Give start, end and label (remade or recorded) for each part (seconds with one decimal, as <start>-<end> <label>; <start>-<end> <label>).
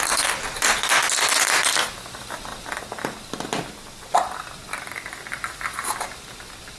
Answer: 0.0-6.8 recorded